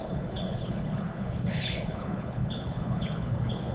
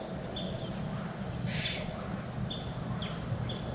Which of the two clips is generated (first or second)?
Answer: first